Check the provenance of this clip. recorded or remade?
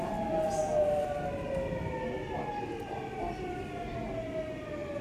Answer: recorded